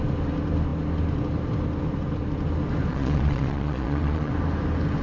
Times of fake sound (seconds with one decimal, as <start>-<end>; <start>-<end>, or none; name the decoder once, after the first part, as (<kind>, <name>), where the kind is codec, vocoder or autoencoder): 2.9-4.3 (vocoder, Vocos)